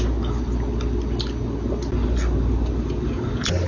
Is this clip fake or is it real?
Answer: real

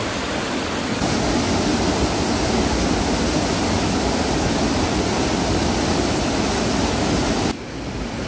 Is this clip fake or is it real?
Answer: real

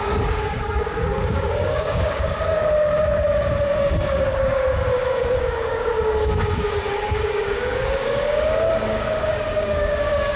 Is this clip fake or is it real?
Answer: fake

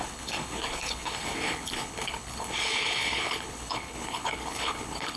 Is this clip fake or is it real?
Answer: fake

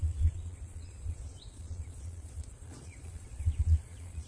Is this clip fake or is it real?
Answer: fake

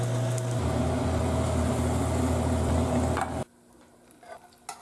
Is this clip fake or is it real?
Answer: real